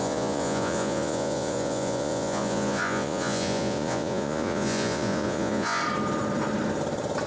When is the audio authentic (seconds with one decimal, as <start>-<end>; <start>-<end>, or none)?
5.8-7.3